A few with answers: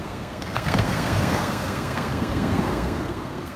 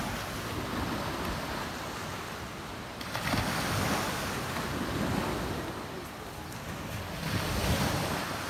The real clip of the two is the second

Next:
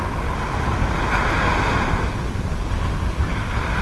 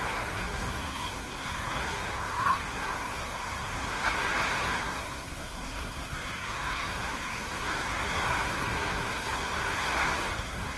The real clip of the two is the first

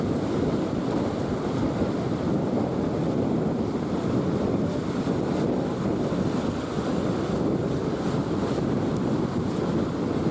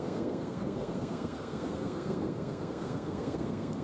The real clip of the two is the first